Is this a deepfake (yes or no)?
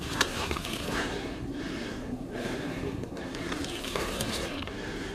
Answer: yes